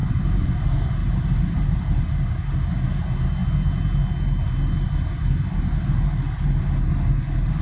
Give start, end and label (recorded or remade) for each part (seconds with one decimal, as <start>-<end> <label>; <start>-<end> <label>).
0.0-0.6 remade; 0.6-1.0 recorded; 1.0-2.1 remade; 2.1-7.6 recorded